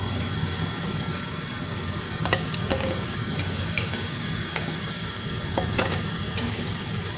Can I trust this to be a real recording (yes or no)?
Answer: no